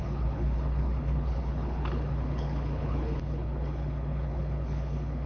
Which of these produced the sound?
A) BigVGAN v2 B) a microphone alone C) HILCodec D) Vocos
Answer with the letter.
C